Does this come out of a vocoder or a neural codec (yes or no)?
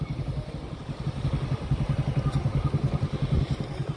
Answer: no